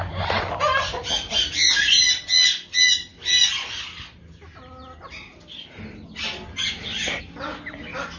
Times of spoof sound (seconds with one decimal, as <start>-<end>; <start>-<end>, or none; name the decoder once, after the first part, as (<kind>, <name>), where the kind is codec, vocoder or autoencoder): none